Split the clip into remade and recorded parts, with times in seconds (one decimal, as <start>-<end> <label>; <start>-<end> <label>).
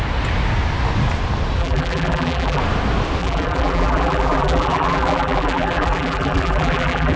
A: 0.0-1.6 recorded; 1.6-2.6 remade; 2.6-3.2 recorded; 3.2-7.2 remade